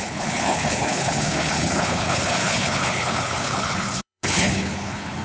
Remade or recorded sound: remade